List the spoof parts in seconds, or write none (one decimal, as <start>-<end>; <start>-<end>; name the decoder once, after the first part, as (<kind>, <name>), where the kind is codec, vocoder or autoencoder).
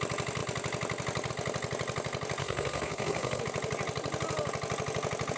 2.4-3.4 (codec, SNAC)